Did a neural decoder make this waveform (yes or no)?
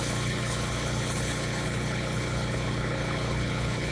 yes